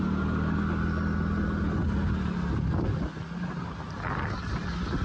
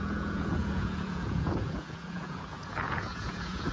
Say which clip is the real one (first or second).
first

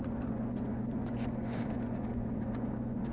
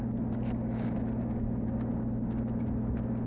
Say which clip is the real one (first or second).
second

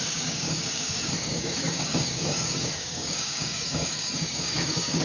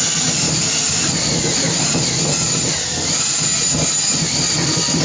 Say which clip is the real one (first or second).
second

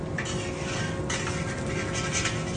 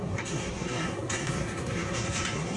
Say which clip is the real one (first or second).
first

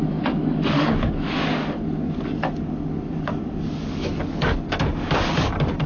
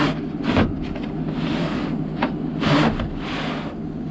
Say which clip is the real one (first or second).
second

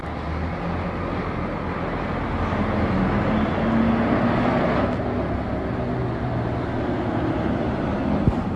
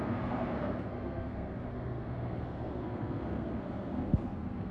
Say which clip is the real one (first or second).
first